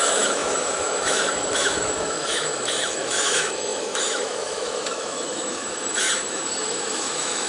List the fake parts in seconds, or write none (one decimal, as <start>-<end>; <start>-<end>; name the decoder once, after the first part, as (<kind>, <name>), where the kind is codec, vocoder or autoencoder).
0.0-7.5 (autoencoder, DAC-VAE)